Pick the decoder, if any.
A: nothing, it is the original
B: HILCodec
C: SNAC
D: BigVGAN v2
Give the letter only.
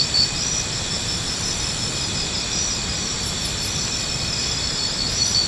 A